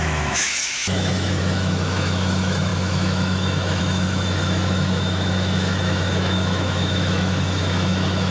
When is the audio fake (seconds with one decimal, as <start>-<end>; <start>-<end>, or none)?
0.0-8.3